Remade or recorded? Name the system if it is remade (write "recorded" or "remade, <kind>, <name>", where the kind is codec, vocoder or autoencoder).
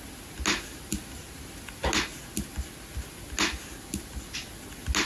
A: recorded